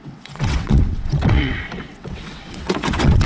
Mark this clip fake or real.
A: fake